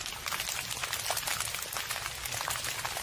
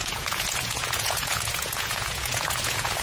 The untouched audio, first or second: first